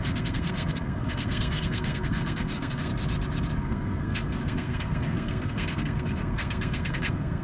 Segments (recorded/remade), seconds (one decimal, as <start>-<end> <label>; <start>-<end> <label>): 0.0-2.9 remade; 2.9-3.6 recorded; 3.6-7.4 remade